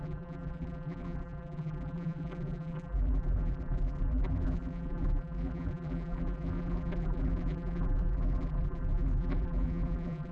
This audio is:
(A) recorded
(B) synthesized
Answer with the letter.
B